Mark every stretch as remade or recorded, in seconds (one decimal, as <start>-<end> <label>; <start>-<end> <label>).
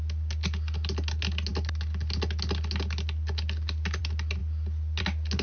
0.0-5.4 recorded